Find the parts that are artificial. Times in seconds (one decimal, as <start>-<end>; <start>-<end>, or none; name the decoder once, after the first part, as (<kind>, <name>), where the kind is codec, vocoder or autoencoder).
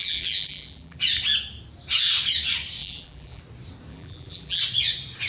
0.0-1.0 (vocoder, BigVGAN v2); 2.8-3.4; 3.9-4.6